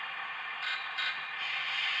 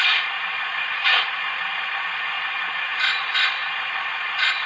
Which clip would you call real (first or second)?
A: first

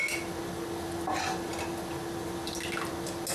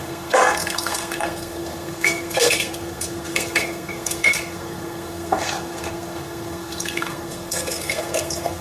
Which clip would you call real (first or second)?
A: first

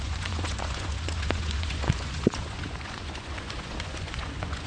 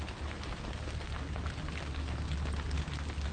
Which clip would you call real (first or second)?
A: second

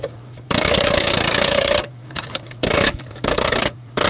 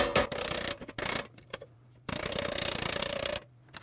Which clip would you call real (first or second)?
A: second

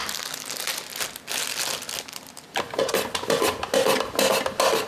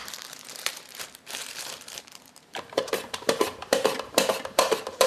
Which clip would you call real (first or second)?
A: first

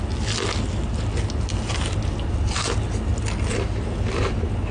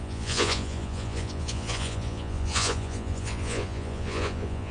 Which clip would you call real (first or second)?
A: first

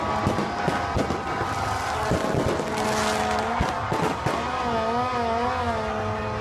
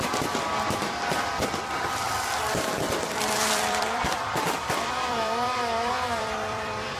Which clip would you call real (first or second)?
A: first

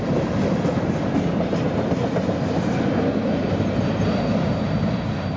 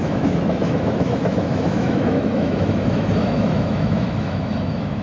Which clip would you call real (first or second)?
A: first